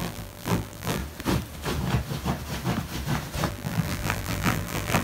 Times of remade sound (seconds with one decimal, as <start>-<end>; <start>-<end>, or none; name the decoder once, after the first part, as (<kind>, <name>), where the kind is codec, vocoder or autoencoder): 0.0-1.0 (vocoder, BigVGAN v2); 3.5-5.0